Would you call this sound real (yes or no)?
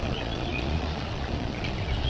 no